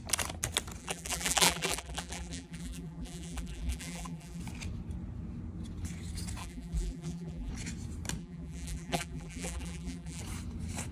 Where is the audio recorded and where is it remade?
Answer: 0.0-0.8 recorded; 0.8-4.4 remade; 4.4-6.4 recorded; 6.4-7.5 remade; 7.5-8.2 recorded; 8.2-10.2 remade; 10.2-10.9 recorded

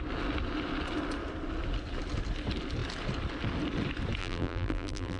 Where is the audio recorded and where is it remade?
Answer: 0.0-4.2 recorded; 4.2-5.2 remade

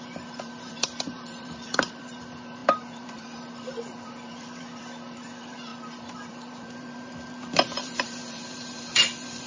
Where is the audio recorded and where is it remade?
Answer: 0.0-9.5 remade

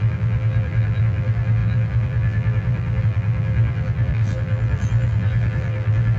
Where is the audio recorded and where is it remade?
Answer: 0.0-6.2 remade

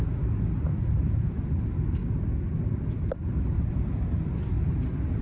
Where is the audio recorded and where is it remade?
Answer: 0.0-0.7 recorded; 0.7-1.3 remade; 1.3-5.2 recorded

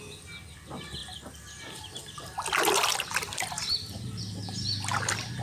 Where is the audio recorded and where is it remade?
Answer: 0.0-5.4 recorded

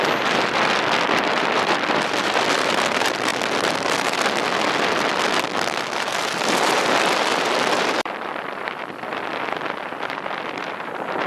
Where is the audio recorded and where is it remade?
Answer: 0.0-3.3 remade; 3.3-6.0 recorded; 6.0-11.3 remade

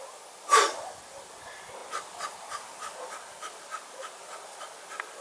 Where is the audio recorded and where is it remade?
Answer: 0.0-5.2 recorded